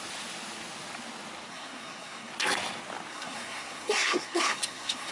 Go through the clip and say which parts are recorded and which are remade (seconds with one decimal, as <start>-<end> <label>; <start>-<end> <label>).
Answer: 0.0-1.5 recorded; 1.5-2.3 remade; 2.3-3.1 recorded; 3.1-5.1 remade